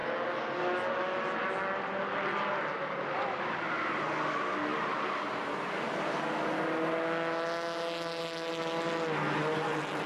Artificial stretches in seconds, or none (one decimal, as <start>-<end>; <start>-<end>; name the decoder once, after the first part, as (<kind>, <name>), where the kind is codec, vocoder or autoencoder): 4.7-6.2 (vocoder, BigVGAN v2)